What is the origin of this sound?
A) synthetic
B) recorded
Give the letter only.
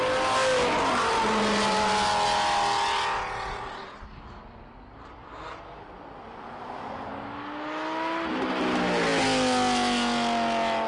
B